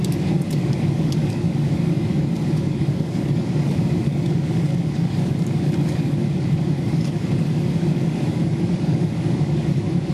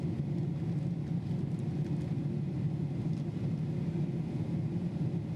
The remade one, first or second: first